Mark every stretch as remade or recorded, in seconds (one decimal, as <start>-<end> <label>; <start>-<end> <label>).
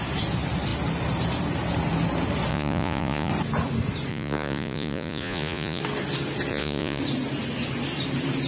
0.0-2.5 recorded; 2.5-3.3 remade; 3.3-4.1 recorded; 4.1-5.8 remade; 5.8-6.5 recorded; 6.5-7.0 remade; 7.0-8.5 recorded